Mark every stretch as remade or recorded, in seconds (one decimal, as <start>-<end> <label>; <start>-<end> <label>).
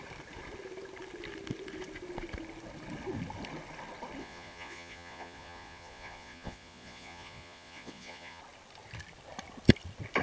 0.0-4.2 recorded; 4.2-8.4 remade; 8.4-10.2 recorded